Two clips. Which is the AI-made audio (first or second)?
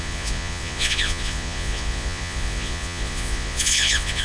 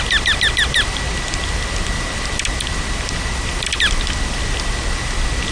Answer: first